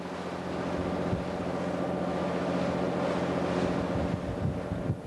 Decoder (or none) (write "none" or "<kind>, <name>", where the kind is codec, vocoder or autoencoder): none